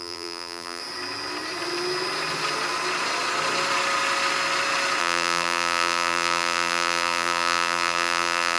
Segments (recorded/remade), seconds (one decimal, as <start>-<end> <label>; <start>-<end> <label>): 0.0-0.8 remade; 0.8-5.0 recorded; 5.0-8.6 remade